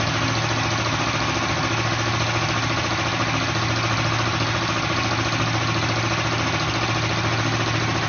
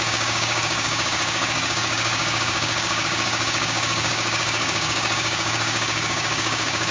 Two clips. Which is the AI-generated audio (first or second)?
second